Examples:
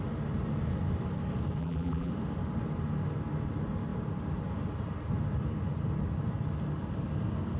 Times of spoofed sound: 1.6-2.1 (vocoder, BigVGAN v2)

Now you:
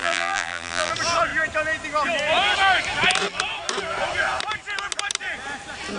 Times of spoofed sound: 0.0-0.9 (vocoder, BigVGAN v2)

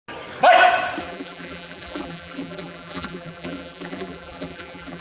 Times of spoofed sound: 1.0-5.0 (vocoder, BigVGAN v2)